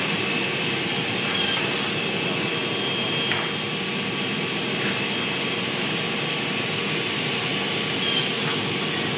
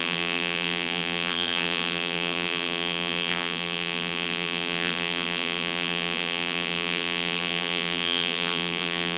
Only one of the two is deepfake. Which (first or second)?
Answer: second